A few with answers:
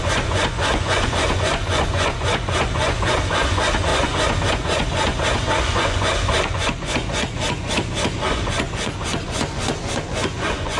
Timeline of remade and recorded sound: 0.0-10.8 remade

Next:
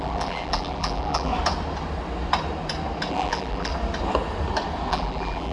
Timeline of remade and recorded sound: 0.0-1.3 remade; 1.3-3.1 recorded; 3.1-3.7 remade; 3.7-4.9 recorded; 4.9-5.5 remade

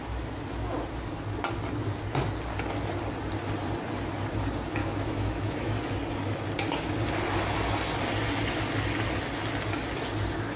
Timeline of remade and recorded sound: 0.0-4.8 recorded; 4.8-5.7 remade; 5.7-10.6 recorded

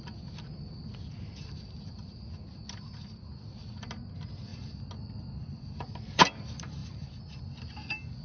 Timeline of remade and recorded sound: 0.0-6.8 recorded; 6.8-7.4 remade; 7.4-8.2 recorded

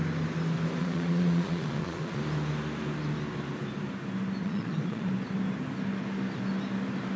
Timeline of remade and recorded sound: 0.0-0.8 recorded; 0.8-2.2 remade; 2.2-4.4 recorded; 4.4-5.1 remade; 5.1-7.2 recorded